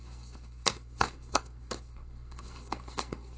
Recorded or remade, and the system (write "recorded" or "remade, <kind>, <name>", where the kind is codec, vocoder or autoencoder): remade, codec, SNAC